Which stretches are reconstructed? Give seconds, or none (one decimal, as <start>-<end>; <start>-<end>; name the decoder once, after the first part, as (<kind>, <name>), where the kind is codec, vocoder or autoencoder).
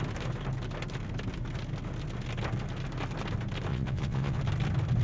3.7-4.4 (vocoder, WaveNeXt)